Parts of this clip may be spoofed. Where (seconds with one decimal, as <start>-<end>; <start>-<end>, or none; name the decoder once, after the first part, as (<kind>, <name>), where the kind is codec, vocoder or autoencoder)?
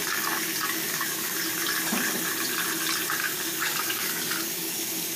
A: 0.0-1.3 (codec, DAC); 3.2-5.2